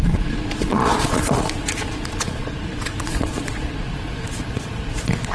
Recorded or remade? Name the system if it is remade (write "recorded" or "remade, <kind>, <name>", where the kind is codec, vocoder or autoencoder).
remade, vocoder, Vocos